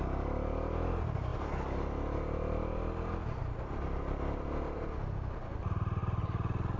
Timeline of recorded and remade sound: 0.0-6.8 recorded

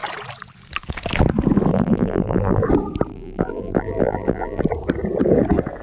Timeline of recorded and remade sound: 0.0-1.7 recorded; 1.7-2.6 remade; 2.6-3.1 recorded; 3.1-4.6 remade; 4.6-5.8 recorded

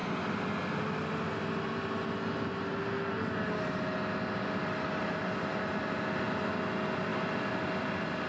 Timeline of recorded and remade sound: 0.0-4.6 recorded; 4.6-5.8 remade; 5.8-7.1 recorded; 7.1-8.3 remade

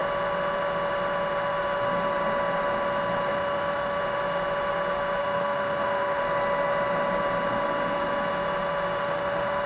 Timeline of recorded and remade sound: 0.0-3.3 recorded; 3.3-4.0 remade; 4.0-5.2 recorded; 5.2-6.2 remade; 6.2-9.0 recorded; 9.0-9.7 remade

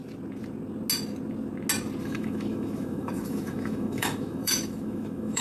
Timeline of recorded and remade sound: 0.0-2.0 recorded; 2.0-5.4 remade